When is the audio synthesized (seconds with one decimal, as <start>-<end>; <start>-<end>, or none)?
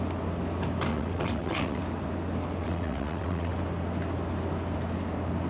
0.9-1.8; 2.6-3.5